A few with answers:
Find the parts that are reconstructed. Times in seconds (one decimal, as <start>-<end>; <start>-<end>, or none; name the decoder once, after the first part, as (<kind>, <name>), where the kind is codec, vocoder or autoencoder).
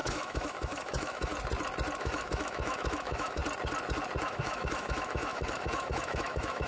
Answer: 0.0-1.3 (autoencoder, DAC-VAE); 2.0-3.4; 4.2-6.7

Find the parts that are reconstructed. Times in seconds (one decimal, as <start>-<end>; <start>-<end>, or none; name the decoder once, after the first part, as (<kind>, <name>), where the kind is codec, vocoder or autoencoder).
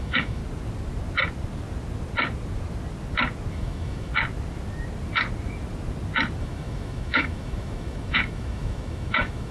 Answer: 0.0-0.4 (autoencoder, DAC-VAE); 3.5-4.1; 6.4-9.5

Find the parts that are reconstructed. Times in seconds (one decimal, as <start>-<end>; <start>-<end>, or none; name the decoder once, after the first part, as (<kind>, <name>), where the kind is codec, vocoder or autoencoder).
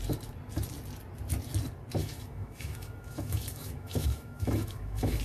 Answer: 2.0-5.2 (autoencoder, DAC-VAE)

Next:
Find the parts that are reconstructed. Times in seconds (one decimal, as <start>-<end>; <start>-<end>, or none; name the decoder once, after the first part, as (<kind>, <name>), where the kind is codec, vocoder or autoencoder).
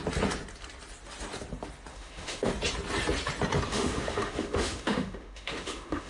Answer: 1.9-2.5 (autoencoder, DAC-VAE); 3.7-6.1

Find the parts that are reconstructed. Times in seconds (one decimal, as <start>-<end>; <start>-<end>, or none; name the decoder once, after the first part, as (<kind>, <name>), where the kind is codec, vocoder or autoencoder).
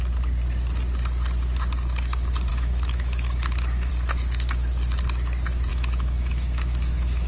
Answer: 2.5-3.9 (autoencoder, DAC-VAE); 5.7-7.3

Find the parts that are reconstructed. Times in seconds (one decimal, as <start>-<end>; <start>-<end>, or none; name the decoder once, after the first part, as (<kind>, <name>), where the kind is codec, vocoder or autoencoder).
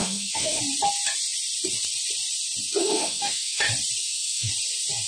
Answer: 0.0-0.6 (autoencoder, DAC-VAE); 2.8-3.6; 4.0-4.5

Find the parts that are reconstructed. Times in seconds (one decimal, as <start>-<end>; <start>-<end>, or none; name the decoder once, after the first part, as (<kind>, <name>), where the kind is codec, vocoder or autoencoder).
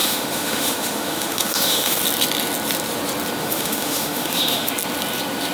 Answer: 0.0-2.0 (autoencoder, DAC-VAE); 3.4-4.7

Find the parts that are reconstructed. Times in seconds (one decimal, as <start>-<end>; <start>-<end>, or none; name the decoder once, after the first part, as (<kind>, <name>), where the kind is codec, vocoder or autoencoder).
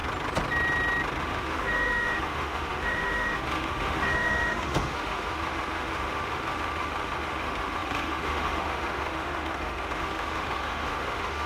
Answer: 1.2-11.5 (autoencoder, DAC-VAE)